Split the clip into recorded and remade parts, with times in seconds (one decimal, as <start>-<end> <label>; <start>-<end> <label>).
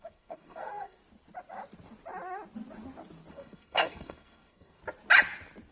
0.0-1.0 remade; 1.0-3.3 recorded; 3.3-4.8 remade; 4.8-5.7 recorded